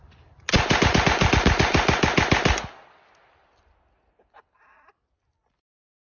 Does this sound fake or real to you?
real